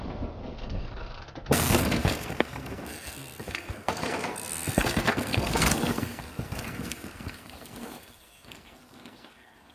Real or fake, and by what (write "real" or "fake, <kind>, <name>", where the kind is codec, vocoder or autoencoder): fake, codec, SNAC